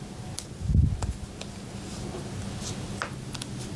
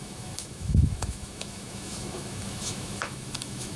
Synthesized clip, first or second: second